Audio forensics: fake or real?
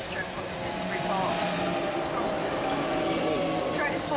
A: real